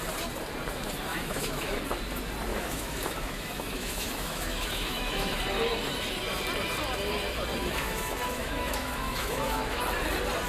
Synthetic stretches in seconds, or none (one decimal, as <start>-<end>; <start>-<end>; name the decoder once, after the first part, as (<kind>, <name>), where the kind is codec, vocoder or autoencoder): 1.1-1.8 (autoencoder, DAC-VAE); 2.5-5.4; 7.6-9.8